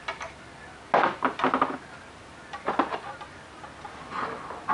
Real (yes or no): yes